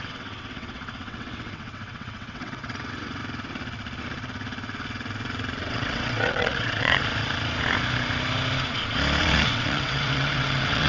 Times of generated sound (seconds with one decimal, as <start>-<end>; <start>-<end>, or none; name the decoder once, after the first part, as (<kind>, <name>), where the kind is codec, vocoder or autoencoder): 0.0-3.2 (vocoder, WaveNeXt); 5.6-7.0; 9.2-10.9